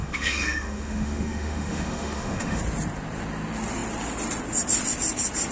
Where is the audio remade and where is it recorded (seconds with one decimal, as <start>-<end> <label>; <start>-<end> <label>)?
0.0-2.6 remade; 2.6-5.5 recorded

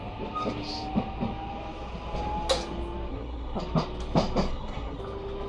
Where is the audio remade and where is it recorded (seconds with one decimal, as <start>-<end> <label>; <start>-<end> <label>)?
0.0-3.1 recorded; 3.1-3.6 remade; 3.6-4.5 recorded; 4.5-5.0 remade; 5.0-5.5 recorded

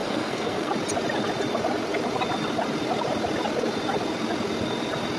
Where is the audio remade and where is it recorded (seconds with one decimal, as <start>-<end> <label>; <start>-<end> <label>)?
0.0-0.7 remade; 0.7-5.2 recorded

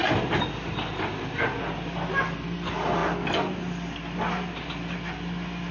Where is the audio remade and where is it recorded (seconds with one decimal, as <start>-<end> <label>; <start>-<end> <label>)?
0.0-5.7 recorded

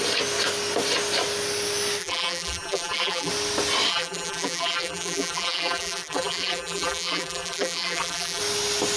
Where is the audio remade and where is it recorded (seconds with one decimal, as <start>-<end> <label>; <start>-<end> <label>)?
0.0-2.0 recorded; 2.0-3.3 remade; 3.3-3.9 recorded; 3.9-8.4 remade; 8.4-9.0 recorded

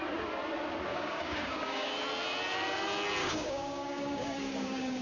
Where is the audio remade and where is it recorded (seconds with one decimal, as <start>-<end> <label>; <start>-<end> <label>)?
0.0-0.9 recorded; 0.9-1.9 remade; 1.9-3.2 recorded; 3.2-5.0 remade